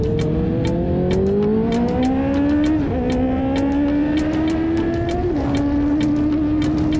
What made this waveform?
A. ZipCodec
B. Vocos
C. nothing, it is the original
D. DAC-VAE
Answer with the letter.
C